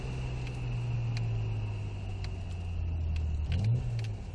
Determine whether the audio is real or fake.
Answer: real